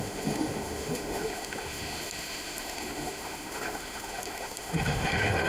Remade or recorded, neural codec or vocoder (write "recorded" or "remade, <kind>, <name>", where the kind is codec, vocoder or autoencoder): remade, autoencoder, DAC-VAE